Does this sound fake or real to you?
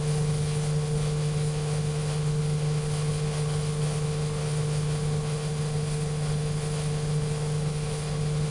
fake